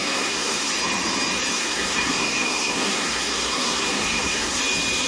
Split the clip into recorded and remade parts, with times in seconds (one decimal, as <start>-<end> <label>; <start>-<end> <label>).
0.0-0.7 remade; 0.7-1.5 recorded; 1.5-4.6 remade; 4.6-5.1 recorded